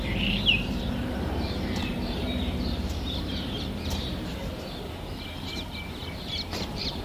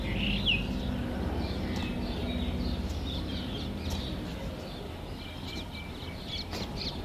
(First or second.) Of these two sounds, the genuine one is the second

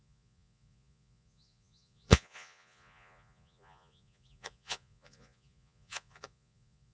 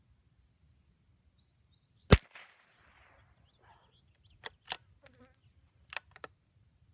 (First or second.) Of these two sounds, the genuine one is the second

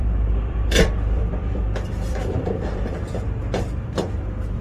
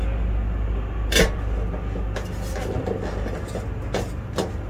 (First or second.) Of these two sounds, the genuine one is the second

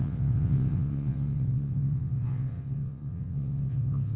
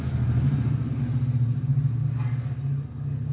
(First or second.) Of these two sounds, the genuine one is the second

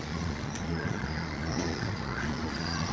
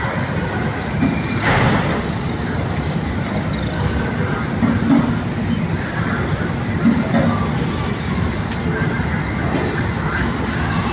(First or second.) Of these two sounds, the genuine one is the second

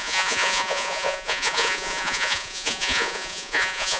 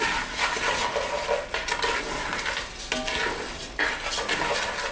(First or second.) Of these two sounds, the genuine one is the second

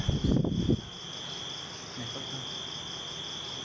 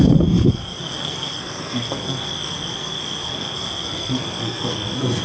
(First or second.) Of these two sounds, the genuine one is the first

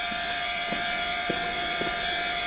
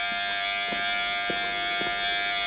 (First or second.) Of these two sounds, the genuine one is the second